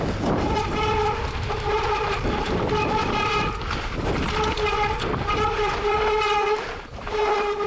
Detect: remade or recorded remade